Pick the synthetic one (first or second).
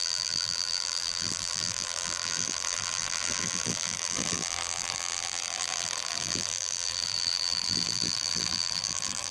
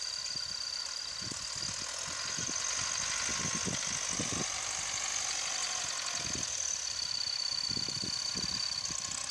first